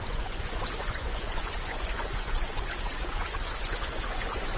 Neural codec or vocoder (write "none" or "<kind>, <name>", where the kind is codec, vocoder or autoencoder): vocoder, Vocos